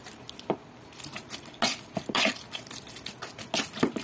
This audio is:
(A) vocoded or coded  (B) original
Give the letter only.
B